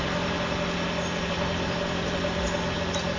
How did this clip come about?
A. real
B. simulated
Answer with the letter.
A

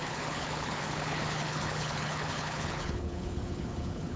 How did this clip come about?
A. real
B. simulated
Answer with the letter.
B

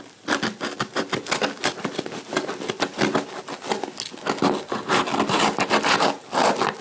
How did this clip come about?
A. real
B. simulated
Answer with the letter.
A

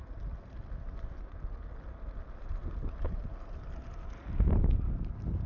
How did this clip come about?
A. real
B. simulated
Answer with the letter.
A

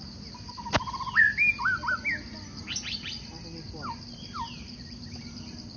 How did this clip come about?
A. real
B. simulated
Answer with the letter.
A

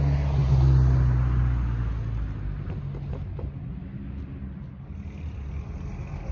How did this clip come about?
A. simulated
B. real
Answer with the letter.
B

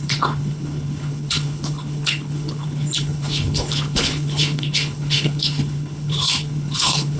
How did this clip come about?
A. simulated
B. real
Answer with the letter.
A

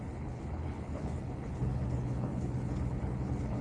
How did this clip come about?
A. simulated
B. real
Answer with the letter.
A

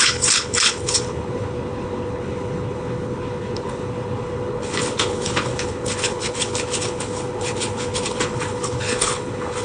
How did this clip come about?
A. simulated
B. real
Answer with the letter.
A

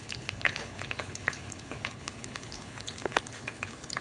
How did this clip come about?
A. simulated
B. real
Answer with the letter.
A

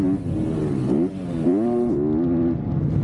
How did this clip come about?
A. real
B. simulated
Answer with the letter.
A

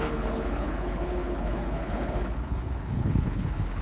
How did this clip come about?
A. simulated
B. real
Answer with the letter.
A